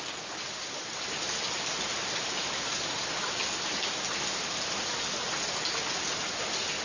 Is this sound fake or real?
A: real